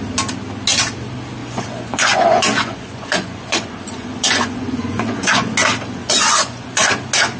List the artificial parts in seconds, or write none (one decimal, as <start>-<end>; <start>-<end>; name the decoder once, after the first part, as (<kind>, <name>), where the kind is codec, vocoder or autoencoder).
1.4-5.5 (vocoder, Vocos); 6.0-6.9